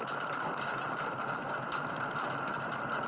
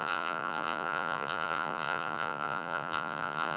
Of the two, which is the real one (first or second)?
first